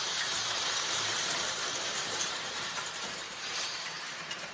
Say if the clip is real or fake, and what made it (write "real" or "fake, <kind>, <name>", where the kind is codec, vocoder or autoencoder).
fake, vocoder, BigVGAN v2